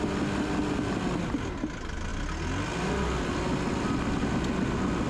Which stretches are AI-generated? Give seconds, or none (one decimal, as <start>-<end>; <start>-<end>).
none